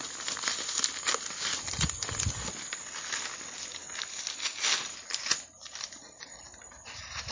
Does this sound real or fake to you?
real